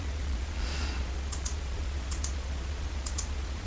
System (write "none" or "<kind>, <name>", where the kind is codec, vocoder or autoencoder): vocoder, Vocos